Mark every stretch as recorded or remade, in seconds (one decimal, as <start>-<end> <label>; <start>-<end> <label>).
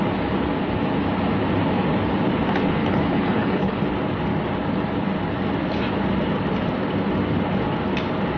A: 0.0-2.8 recorded; 2.8-3.8 remade; 3.8-8.4 recorded